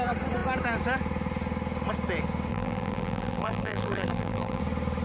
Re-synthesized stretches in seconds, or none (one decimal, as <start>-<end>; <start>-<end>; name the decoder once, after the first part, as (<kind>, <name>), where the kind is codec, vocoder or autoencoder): 2.5-4.6 (vocoder, BigVGAN v2)